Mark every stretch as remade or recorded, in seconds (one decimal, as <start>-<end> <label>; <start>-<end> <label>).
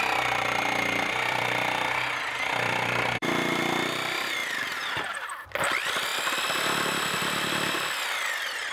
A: 0.0-6.1 remade; 6.1-6.9 recorded; 6.9-8.7 remade